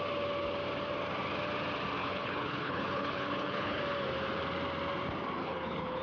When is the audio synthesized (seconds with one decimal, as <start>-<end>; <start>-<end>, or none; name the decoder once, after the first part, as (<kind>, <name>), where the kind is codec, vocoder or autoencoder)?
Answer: 2.0-3.8 (codec, HILCodec); 5.4-6.0